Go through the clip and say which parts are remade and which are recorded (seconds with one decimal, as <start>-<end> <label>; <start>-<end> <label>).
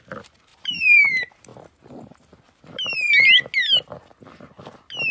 0.0-0.5 recorded; 0.5-1.1 remade; 1.1-5.1 recorded